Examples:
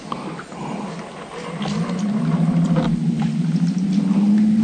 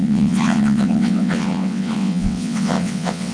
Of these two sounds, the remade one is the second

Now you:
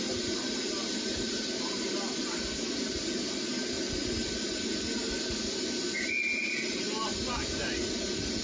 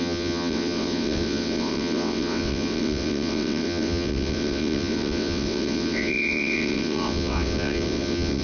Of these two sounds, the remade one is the second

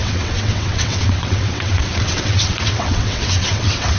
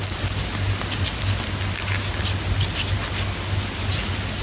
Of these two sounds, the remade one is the first